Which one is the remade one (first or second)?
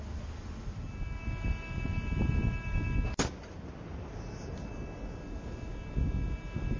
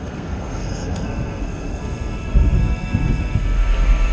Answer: second